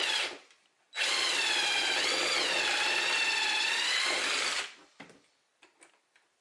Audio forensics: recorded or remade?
recorded